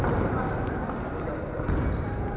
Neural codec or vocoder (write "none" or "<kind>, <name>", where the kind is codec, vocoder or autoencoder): none